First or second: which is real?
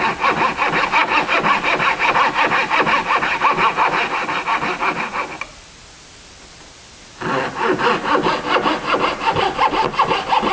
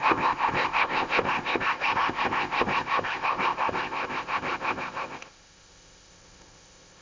first